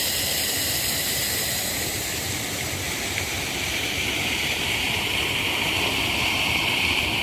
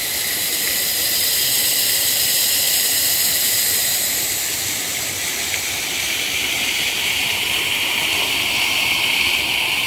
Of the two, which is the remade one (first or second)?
first